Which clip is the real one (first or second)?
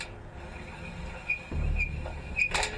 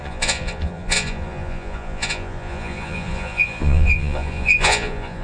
first